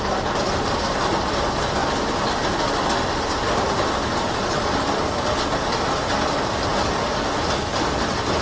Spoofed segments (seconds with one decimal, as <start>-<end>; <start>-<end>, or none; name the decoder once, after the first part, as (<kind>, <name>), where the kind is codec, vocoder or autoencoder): none